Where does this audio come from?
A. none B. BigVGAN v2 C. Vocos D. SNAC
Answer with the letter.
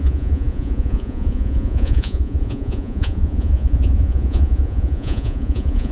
C